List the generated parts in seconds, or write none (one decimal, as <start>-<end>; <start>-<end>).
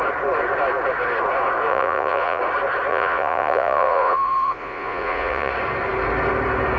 1.7-2.4; 2.9-5.5